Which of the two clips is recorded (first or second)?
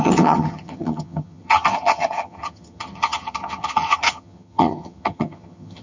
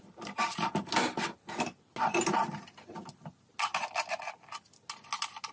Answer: second